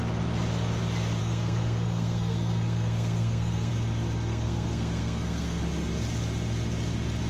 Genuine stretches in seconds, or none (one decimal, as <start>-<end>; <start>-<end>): 0.0-1.2; 3.7-4.3; 5.6-7.3